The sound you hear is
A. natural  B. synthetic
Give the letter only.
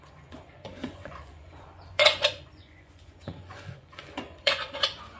B